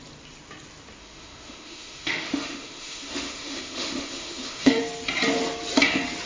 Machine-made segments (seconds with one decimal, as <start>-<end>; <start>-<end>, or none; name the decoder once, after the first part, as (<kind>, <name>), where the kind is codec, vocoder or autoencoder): 1.0-4.8 (autoencoder, DAC-VAE)